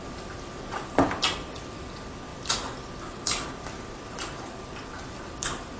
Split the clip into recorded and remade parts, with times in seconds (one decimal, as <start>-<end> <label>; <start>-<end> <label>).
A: 0.0-5.8 recorded